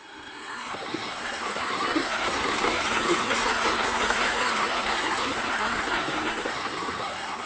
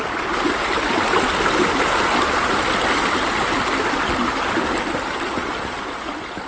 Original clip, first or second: second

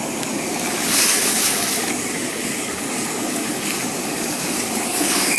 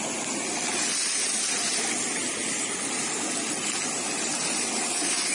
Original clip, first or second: second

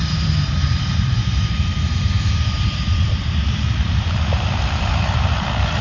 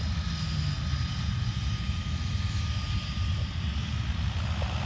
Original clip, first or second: second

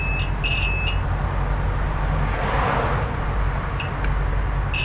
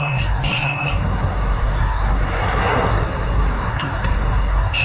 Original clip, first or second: first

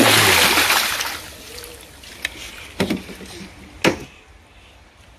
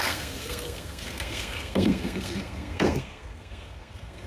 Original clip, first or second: first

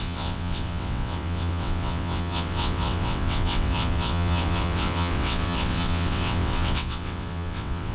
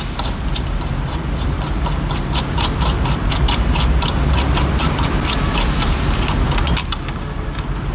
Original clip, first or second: second